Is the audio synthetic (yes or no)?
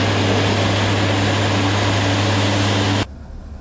no